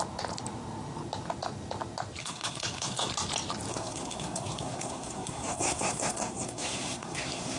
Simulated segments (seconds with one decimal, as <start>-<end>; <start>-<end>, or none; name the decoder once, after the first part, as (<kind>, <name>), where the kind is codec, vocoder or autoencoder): 2.2-3.1 (codec, SNAC); 3.7-7.6